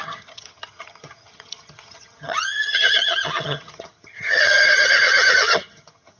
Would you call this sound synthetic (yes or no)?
yes